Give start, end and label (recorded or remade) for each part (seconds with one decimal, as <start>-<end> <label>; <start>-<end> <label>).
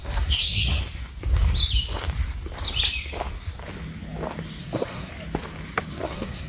0.0-0.8 remade; 0.8-4.6 recorded; 4.6-5.1 remade; 5.1-5.9 recorded; 5.9-6.5 remade